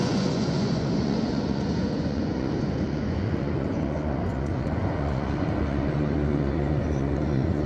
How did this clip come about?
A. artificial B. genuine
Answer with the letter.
A